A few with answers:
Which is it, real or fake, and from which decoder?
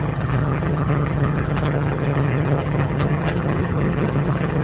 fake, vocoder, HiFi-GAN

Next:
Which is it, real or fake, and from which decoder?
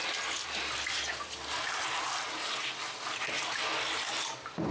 real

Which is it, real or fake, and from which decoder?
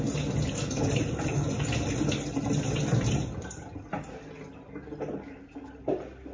real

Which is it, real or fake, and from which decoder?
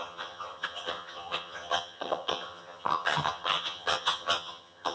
fake, vocoder, HiFi-GAN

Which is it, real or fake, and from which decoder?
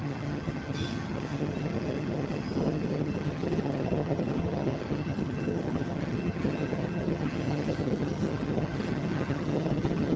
fake, vocoder, HiFi-GAN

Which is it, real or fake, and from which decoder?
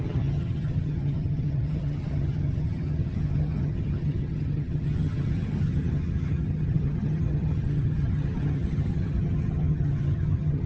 fake, vocoder, HiFi-GAN